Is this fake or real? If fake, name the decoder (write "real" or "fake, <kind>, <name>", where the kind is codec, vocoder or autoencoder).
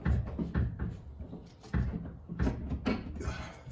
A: real